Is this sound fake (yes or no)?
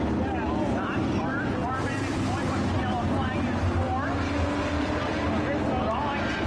no